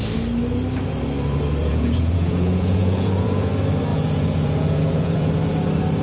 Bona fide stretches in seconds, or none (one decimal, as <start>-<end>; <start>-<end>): 0.0-1.6; 3.5-3.9; 5.3-6.0